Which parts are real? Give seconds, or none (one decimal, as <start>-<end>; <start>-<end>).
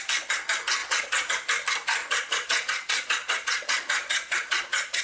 0.0-0.8; 1.3-2.0